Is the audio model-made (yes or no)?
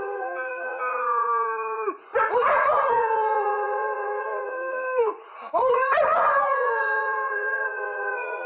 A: yes